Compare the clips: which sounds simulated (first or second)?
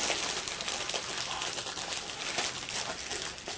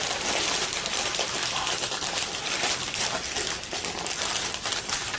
second